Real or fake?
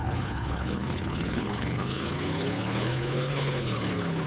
fake